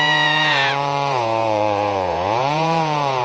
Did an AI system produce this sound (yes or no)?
yes